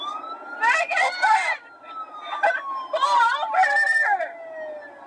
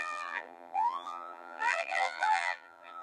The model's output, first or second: second